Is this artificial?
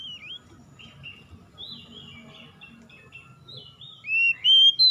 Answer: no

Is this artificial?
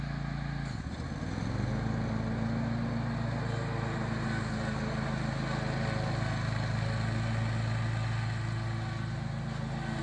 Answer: no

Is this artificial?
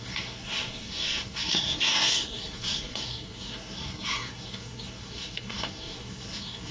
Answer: yes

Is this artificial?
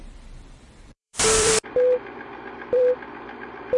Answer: yes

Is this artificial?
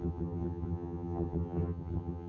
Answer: yes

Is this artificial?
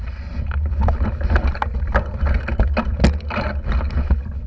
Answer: no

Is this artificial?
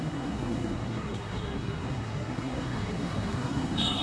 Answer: yes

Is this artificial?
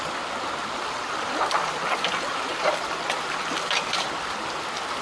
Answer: yes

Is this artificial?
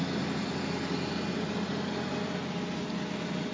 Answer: no